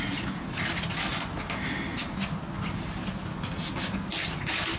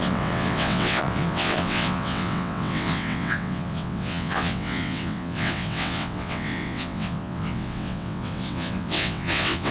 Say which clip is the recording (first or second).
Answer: first